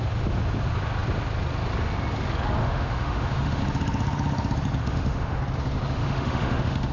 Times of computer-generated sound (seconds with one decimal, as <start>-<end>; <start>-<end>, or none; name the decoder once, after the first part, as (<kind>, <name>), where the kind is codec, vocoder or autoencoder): 2.6-3.6 (autoencoder, DAC-VAE); 4.8-5.4; 6.0-6.9